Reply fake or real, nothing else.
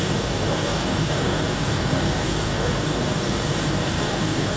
fake